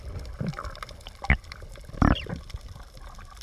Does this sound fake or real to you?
fake